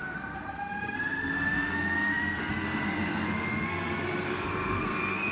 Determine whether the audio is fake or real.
fake